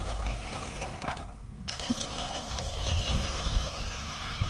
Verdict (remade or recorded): remade